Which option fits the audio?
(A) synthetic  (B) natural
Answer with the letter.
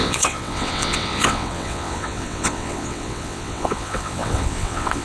A